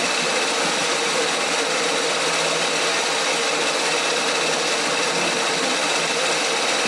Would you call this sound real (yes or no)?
yes